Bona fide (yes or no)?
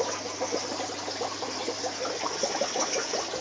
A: yes